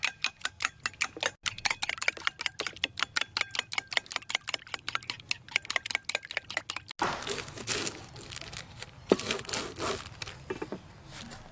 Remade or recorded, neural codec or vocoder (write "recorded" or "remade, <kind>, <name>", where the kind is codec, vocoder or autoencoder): recorded